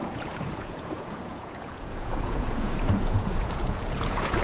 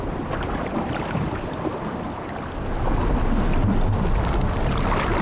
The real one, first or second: second